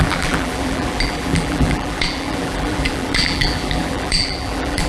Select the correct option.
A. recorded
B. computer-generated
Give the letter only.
B